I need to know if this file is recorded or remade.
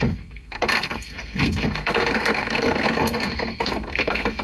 remade